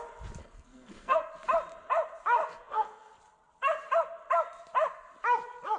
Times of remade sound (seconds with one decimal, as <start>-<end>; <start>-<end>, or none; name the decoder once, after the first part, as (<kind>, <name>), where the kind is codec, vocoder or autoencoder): 0.4-1.3 (codec, SNAC); 2.5-3.2